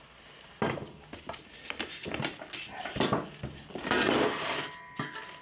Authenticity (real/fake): real